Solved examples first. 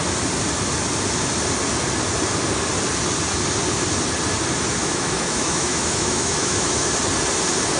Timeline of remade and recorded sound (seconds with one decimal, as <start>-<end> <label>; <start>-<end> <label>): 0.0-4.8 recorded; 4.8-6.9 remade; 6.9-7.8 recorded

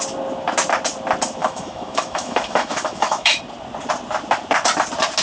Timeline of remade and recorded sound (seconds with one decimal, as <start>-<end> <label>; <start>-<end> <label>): 0.0-1.4 recorded; 1.4-3.4 remade; 3.4-5.2 recorded

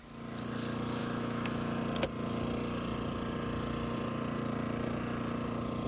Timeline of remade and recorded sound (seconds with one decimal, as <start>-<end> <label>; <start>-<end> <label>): 0.0-1.0 recorded; 1.0-1.8 remade; 1.8-5.9 recorded

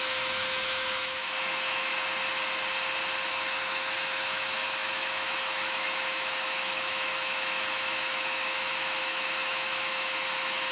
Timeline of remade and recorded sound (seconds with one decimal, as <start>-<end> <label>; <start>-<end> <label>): 0.0-1.9 remade; 1.9-3.3 recorded; 3.3-10.7 remade

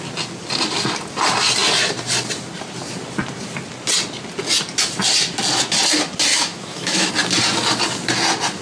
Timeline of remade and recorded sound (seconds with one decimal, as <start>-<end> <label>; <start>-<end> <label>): 0.0-6.3 recorded; 6.3-7.1 remade; 7.1-8.6 recorded

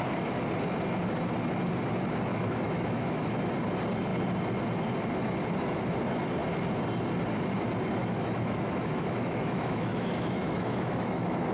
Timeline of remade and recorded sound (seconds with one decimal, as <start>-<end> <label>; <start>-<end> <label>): 0.0-2.3 recorded; 2.3-3.3 remade; 3.3-8.0 recorded; 8.0-11.5 remade